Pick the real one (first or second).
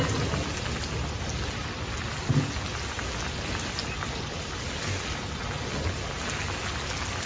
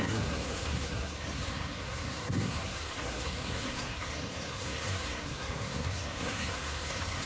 first